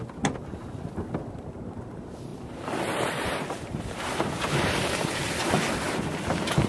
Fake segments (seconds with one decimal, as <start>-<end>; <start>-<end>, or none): 2.3-5.8

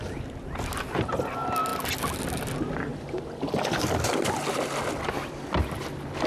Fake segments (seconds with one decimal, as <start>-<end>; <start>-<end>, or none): 1.7-2.2; 2.9-3.5

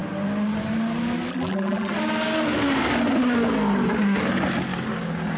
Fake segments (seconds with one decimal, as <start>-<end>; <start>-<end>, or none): 1.3-1.9

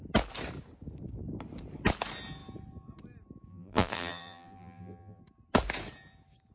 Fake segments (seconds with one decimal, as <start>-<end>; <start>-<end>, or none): 3.5-5.2

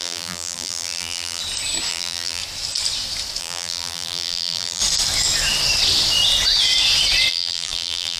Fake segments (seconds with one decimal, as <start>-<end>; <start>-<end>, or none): 0.0-1.4; 1.9-2.4; 3.4-4.8; 7.3-8.2